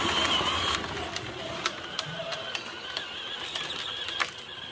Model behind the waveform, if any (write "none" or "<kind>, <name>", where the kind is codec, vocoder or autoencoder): none